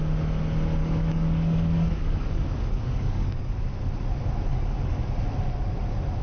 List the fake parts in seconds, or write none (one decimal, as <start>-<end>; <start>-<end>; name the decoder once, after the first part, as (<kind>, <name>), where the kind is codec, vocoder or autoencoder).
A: 0.8-3.5 (codec, DAC); 4.5-5.0